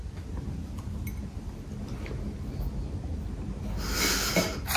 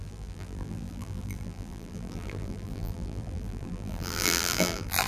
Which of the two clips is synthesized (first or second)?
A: second